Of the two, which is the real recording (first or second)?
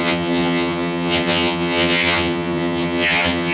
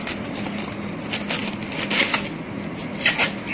second